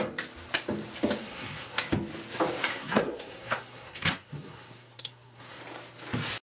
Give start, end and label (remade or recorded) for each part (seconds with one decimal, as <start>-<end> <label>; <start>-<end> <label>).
0.0-1.2 recorded; 1.2-1.8 remade; 1.8-2.7 recorded; 2.7-5.6 remade; 5.6-6.5 recorded